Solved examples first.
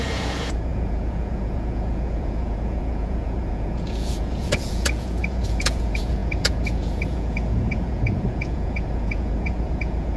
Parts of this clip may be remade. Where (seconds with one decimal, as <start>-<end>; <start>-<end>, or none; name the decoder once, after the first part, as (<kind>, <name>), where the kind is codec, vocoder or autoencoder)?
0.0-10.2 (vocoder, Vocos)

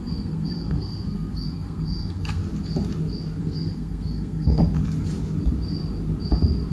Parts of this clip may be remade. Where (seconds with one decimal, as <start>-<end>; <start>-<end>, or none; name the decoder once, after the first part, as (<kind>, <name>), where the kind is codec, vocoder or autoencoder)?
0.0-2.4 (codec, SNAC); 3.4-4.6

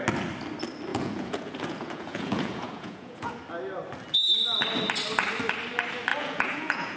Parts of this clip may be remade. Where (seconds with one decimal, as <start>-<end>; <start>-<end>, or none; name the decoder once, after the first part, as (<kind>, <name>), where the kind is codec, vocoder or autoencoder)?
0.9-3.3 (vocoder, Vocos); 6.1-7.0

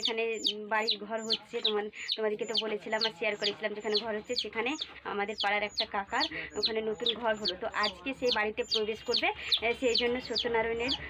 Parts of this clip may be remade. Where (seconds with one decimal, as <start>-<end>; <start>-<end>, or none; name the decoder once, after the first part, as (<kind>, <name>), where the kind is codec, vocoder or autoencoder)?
none

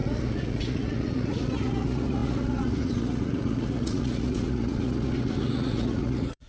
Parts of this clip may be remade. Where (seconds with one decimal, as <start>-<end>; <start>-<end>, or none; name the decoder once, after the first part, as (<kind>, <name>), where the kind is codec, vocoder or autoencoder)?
0.0-6.5 (vocoder, Vocos)

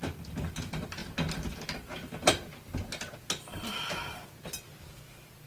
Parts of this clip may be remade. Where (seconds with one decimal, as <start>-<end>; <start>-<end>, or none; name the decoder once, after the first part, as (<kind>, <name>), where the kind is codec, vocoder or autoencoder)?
none

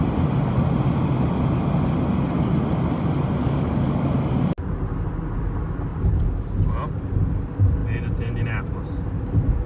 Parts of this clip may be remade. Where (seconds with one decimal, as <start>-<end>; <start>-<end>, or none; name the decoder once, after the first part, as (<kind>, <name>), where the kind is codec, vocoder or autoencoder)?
3.4-4.1 (codec, DAC)